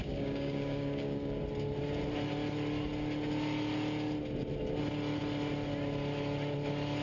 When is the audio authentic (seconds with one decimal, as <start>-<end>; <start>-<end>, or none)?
1.4-7.0